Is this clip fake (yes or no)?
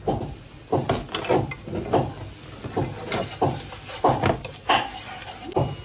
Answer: no